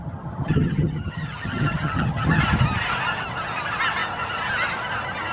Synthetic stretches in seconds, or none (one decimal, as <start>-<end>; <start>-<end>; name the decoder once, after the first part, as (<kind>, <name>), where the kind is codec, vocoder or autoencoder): 0.0-2.4 (vocoder, HiFi-GAN)

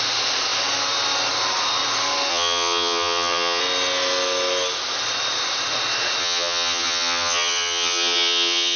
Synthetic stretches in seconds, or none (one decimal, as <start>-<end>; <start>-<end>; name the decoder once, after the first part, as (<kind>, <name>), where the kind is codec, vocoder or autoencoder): 2.3-3.6 (vocoder, HiFi-GAN); 6.2-8.8